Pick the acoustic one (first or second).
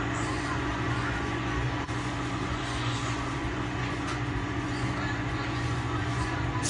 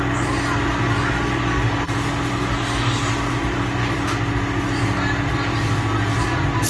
second